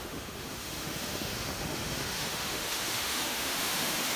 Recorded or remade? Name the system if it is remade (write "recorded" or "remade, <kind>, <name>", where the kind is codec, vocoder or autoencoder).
remade, autoencoder, DAC-VAE